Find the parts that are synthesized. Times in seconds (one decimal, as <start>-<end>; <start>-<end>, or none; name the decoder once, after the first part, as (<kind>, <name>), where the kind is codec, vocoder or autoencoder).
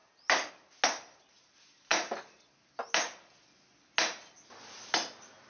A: none